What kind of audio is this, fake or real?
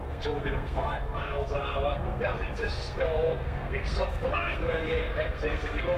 fake